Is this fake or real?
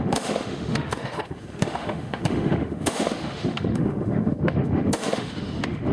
fake